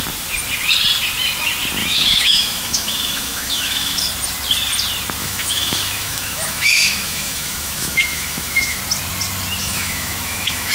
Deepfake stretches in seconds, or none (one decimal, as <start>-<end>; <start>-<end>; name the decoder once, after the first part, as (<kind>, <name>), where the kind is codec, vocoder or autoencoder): 1.8-4.0 (autoencoder, DAC-VAE); 5.2-8.8; 9.6-10.7